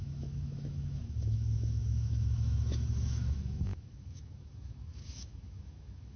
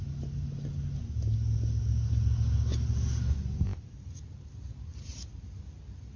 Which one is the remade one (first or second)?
first